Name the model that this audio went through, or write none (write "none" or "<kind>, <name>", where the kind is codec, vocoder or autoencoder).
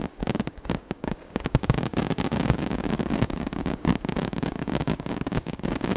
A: codec, DAC